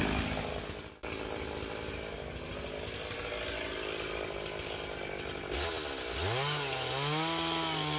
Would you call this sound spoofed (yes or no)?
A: no